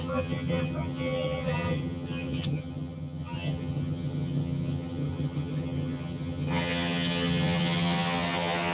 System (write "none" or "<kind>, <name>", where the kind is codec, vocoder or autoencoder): vocoder, HiFi-GAN